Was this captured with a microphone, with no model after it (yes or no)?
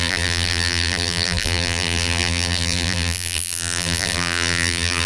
no